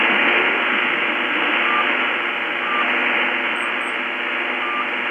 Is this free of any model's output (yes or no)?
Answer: yes